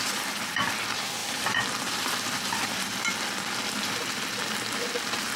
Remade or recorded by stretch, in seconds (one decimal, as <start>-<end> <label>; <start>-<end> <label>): 0.0-1.2 recorded; 1.2-4.4 remade; 4.4-5.4 recorded